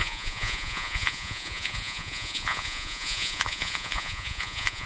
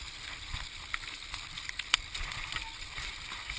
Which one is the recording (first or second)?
second